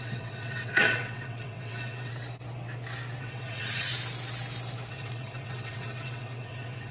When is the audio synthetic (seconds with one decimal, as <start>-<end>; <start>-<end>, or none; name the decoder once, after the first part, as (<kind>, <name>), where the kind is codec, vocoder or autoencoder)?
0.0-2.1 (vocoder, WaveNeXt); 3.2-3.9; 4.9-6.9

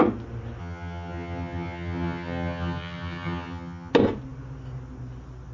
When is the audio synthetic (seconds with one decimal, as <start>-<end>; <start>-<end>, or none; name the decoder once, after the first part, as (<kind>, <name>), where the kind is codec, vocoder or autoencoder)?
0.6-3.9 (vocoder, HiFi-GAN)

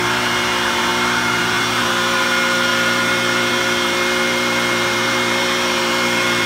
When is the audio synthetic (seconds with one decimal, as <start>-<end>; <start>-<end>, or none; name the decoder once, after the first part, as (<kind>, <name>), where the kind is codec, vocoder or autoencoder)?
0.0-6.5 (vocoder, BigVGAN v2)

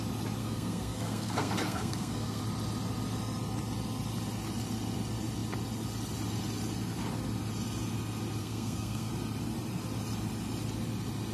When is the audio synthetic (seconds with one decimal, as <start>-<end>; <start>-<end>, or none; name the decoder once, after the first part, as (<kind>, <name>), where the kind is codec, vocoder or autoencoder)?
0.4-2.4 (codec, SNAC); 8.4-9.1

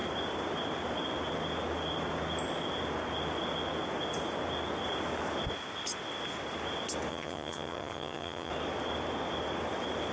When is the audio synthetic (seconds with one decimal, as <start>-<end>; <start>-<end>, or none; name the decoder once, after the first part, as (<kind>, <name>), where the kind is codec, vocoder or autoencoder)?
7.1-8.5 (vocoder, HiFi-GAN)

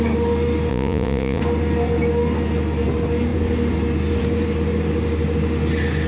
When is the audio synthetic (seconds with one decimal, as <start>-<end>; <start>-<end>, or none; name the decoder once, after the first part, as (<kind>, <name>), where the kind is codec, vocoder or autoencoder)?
0.7-1.4 (vocoder, Vocos)

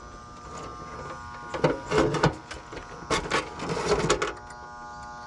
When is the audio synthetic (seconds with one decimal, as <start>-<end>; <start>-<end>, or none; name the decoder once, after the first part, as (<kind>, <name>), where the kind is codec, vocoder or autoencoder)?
none